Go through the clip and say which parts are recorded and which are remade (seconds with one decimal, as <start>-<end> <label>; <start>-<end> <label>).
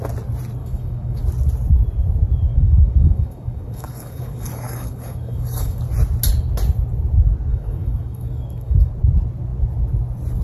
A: 0.0-0.6 recorded; 0.6-1.2 remade; 1.2-2.5 recorded; 2.5-5.8 remade; 5.8-7.5 recorded; 7.5-8.9 remade; 8.9-10.4 recorded